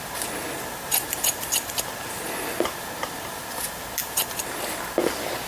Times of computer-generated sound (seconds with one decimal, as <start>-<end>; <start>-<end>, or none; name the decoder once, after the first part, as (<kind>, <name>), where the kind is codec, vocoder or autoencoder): none